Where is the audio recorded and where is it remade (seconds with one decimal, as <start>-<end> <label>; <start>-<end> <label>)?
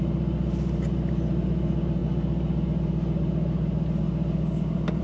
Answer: 0.0-5.0 recorded